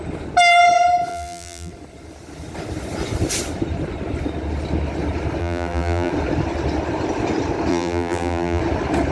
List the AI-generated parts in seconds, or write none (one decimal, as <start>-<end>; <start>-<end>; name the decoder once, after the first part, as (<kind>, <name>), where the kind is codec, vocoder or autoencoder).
1.1-1.7 (vocoder, BigVGAN v2); 5.4-6.1; 7.7-8.6